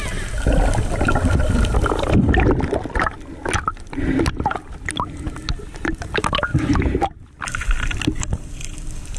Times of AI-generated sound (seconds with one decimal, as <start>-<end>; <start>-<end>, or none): none